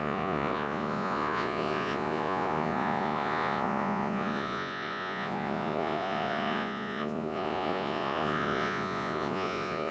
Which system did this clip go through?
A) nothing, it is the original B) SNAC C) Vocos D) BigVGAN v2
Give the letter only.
C